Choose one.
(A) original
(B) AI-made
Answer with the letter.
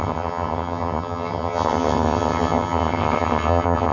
B